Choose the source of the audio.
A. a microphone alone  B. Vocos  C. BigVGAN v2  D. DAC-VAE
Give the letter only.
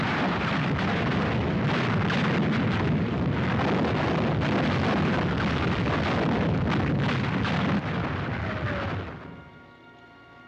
A